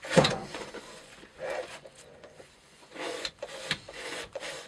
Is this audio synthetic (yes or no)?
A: yes